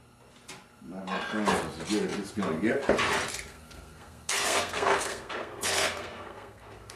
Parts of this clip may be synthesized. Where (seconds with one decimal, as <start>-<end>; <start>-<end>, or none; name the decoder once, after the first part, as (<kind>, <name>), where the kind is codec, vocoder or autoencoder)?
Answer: 3.5-7.0 (codec, SNAC)